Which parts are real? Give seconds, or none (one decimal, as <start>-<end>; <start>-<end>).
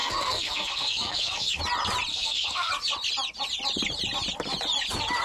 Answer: 1.6-2.1; 2.7-5.2